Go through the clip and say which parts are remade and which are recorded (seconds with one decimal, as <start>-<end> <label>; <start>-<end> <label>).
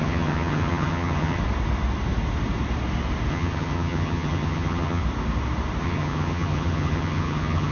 0.0-1.4 remade; 1.4-3.3 recorded; 3.3-5.0 remade; 5.0-5.8 recorded; 5.8-7.7 remade